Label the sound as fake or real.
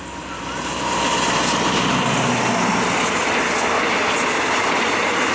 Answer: real